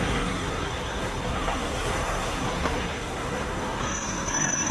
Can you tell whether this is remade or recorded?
remade